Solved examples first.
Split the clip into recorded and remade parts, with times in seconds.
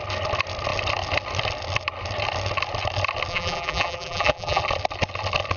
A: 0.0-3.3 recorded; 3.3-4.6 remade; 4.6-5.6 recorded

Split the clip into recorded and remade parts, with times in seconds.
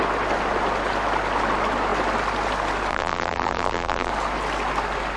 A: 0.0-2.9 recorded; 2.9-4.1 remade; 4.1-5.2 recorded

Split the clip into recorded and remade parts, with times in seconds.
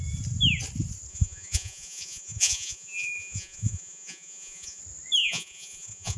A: 0.0-1.1 recorded; 1.1-4.8 remade; 4.8-5.2 recorded; 5.2-6.2 remade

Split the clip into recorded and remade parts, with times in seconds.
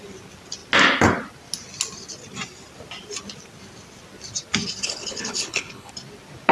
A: 0.0-4.8 recorded; 4.8-5.9 remade; 5.9-6.5 recorded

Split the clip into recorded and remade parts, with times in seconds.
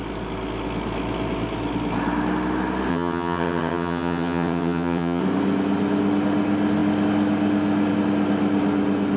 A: 0.0-2.9 recorded; 2.9-5.2 remade; 5.2-9.2 recorded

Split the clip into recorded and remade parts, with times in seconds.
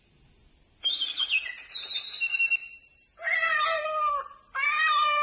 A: 0.0-2.6 recorded; 2.6-3.8 remade; 3.8-5.2 recorded